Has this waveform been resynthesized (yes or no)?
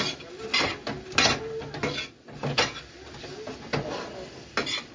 no